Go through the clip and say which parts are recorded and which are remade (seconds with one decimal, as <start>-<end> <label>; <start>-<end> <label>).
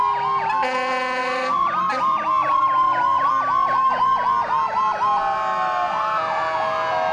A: 0.0-1.2 recorded; 1.2-3.3 remade; 3.3-7.1 recorded